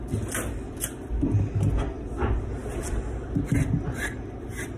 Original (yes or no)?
yes